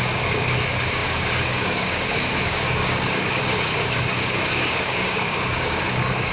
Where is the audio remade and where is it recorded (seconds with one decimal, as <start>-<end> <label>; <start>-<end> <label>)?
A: 0.0-6.3 remade